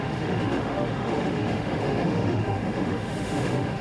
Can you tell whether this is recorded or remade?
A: remade